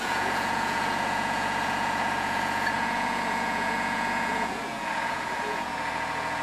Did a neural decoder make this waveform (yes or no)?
yes